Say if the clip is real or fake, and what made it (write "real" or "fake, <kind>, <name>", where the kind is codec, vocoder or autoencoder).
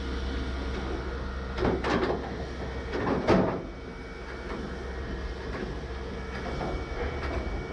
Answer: real